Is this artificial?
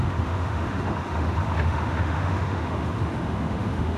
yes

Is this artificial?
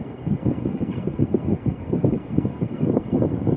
yes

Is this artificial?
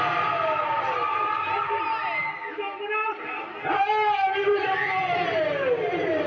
no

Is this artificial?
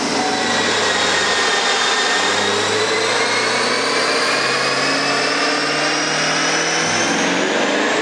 no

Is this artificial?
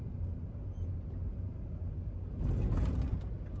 no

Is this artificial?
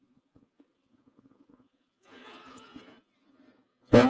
yes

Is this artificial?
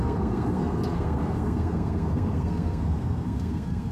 yes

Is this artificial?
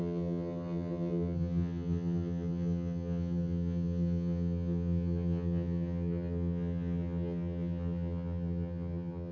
yes